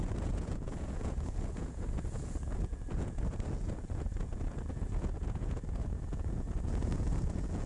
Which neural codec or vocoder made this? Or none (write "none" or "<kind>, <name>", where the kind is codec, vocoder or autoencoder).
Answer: vocoder, Vocos